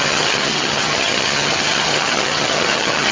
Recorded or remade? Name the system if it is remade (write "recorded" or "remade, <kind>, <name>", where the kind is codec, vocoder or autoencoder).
remade, vocoder, HiFi-GAN